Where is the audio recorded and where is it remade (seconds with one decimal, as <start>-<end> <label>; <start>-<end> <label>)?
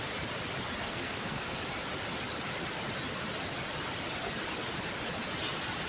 0.0-0.8 recorded; 0.8-1.6 remade; 1.6-5.9 recorded